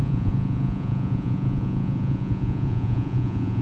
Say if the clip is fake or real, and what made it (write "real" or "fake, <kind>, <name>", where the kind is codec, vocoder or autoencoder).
fake, vocoder, Vocos